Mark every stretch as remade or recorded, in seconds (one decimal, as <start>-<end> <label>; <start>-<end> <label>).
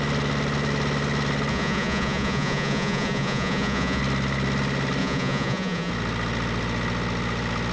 0.0-1.5 recorded; 1.5-4.0 remade; 4.0-5.0 recorded; 5.0-5.9 remade; 5.9-7.7 recorded